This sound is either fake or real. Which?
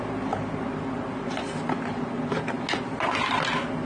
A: real